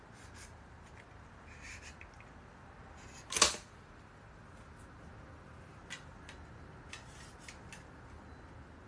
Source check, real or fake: real